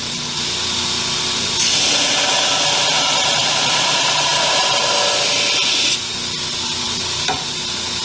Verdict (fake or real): real